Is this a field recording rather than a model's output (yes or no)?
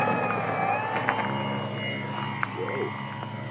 yes